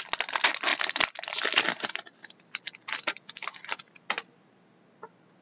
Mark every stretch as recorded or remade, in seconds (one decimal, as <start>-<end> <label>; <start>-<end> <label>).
0.0-0.7 recorded; 0.7-3.9 remade; 3.9-5.4 recorded